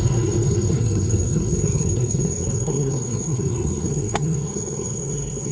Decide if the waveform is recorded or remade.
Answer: remade